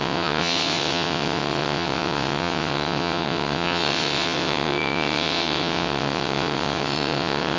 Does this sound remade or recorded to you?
remade